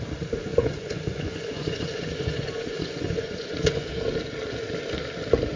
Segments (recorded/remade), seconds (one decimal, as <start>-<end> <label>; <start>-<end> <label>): 0.0-0.5 recorded; 0.5-3.9 remade; 3.9-5.6 recorded

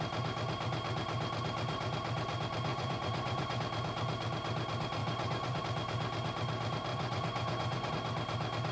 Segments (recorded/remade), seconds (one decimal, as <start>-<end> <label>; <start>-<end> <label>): 0.0-2.7 recorded; 2.7-3.6 remade; 3.6-5.0 recorded; 5.0-5.6 remade; 5.6-6.9 recorded; 6.9-7.9 remade; 7.9-8.7 recorded

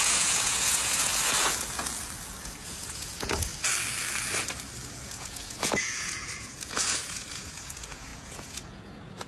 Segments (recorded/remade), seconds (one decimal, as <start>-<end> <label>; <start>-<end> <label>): 0.0-1.1 remade; 1.1-2.4 recorded; 2.4-3.5 remade; 3.5-4.9 recorded; 4.9-9.3 remade

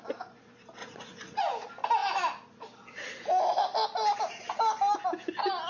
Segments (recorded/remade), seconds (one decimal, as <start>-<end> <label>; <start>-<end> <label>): 0.0-0.8 recorded; 0.8-1.4 remade; 1.4-5.7 recorded